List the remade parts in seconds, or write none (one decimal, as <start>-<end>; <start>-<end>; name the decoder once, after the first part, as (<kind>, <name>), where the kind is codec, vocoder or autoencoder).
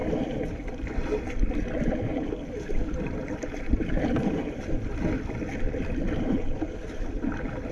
2.1-4.6 (vocoder, BigVGAN v2)